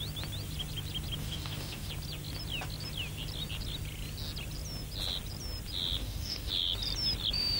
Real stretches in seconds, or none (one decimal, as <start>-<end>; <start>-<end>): 0.0-1.2; 1.9-6.0; 6.5-7.6